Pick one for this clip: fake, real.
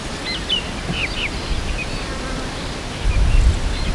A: fake